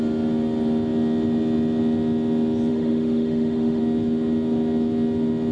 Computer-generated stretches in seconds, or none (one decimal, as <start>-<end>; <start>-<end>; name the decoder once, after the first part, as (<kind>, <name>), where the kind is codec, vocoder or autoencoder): 2.7-3.8 (autoencoder, DAC-VAE)